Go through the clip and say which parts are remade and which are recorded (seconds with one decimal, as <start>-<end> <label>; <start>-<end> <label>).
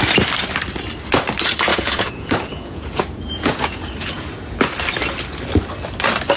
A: 0.0-1.7 recorded; 1.7-4.3 remade; 4.3-6.4 recorded